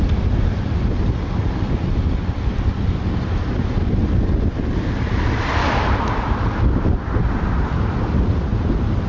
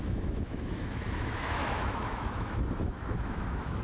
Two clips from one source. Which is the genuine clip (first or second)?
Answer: first